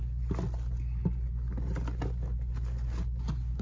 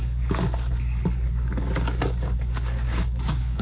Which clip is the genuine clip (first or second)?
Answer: first